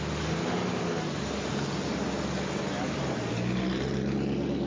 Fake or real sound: real